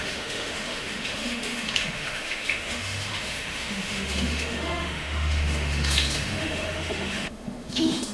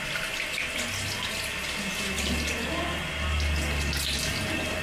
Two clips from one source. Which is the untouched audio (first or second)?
second